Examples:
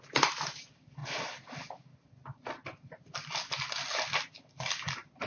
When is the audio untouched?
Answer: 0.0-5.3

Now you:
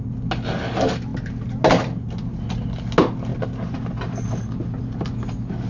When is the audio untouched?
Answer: 0.0-5.7

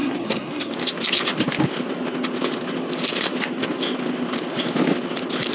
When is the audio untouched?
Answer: 0.7-5.5

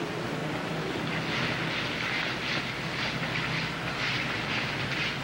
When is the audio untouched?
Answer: 0.0-5.2

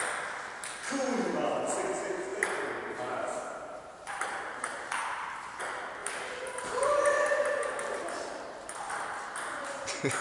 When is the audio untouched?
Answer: 0.0-2.3; 5.6-6.0; 8.9-10.2

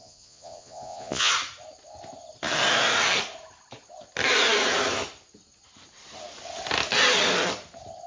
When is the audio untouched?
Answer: 1.3-8.1